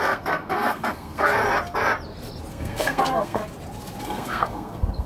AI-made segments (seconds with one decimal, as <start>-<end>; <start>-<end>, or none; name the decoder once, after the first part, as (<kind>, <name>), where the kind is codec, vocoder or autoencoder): 0.0-1.4 (codec, SNAC); 2.5-3.4; 4.0-5.1